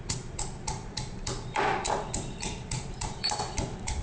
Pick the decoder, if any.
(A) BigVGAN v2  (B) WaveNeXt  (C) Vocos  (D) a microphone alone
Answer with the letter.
A